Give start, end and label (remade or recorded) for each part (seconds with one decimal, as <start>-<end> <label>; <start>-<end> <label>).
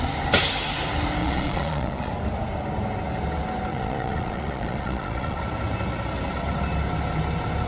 0.0-1.2 recorded; 1.2-2.1 remade; 2.1-3.7 recorded; 3.7-5.4 remade; 5.4-7.7 recorded